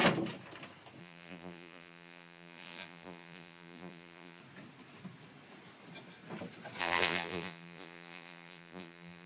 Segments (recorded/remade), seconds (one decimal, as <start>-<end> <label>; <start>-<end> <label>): 0.0-1.0 recorded; 1.0-4.4 remade; 4.4-6.8 recorded; 6.8-9.3 remade